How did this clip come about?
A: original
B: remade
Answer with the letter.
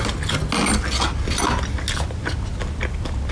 A